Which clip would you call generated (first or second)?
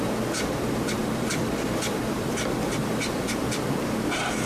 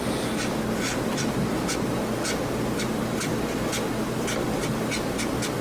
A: first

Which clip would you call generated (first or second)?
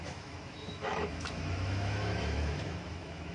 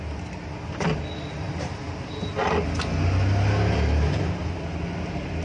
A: first